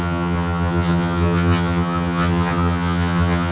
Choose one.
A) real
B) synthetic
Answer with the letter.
B